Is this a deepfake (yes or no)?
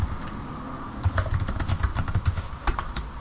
no